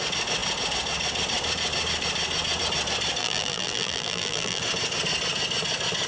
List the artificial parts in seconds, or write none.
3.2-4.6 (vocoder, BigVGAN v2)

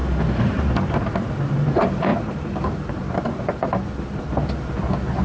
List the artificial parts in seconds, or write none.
0.0-0.7 (vocoder, BigVGAN v2); 2.1-4.3

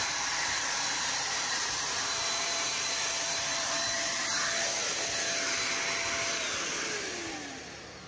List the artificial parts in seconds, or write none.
0.0-4.3 (vocoder, BigVGAN v2)

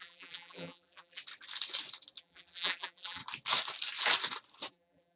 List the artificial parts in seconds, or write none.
0.0-1.2 (vocoder, BigVGAN v2); 2.2-3.2; 4.7-5.2

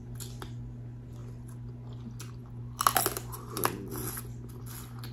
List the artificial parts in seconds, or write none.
none